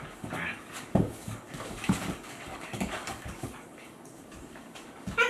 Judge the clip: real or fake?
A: fake